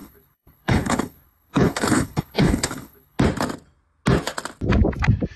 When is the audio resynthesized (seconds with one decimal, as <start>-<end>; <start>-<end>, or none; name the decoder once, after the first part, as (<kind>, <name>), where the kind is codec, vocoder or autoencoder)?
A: 0.0-3.2 (codec, HILCodec)

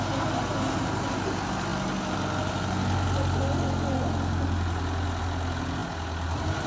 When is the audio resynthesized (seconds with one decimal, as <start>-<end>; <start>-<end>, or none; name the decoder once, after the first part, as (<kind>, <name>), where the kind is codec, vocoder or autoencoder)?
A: none

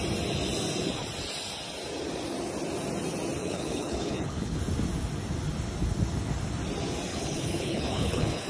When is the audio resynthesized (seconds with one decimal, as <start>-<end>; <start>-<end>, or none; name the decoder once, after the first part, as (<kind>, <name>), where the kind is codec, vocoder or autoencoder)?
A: 3.4-4.6 (codec, HILCodec); 7.1-8.5

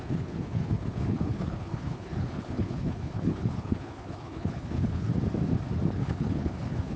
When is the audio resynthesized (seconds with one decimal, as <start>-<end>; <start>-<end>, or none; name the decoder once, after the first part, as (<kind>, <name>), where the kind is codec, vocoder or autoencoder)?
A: 0.0-5.1 (codec, HILCodec); 5.9-7.0

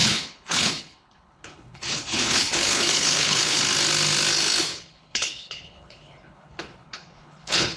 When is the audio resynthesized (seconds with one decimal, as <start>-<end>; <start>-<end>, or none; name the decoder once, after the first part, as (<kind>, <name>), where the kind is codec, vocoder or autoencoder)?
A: 0.0-3.6 (codec, HILCodec); 4.7-7.8